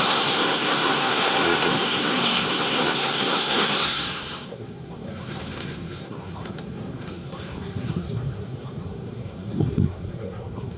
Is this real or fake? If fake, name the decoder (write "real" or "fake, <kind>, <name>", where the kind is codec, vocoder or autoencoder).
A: fake, codec, SNAC